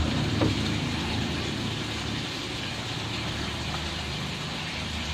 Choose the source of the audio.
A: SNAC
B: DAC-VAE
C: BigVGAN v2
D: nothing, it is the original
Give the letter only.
C